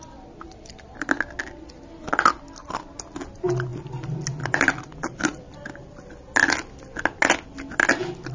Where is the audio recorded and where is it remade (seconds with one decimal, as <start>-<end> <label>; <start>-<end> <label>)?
0.0-3.7 recorded; 3.7-6.1 remade; 6.1-8.3 recorded